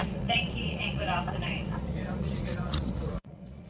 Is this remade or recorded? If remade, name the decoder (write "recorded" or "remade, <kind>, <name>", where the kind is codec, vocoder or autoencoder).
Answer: remade, vocoder, Vocos